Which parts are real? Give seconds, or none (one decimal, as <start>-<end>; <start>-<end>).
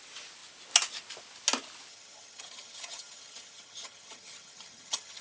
0.0-1.9